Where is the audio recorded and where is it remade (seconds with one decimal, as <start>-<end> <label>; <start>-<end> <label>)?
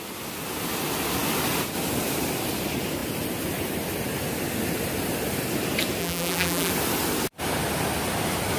0.0-6.0 recorded; 6.0-6.7 remade; 6.7-8.6 recorded